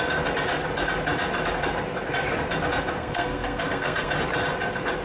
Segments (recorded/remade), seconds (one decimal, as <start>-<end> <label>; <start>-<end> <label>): 0.0-3.0 recorded; 3.0-4.1 remade; 4.1-5.0 recorded